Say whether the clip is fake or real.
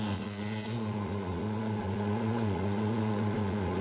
fake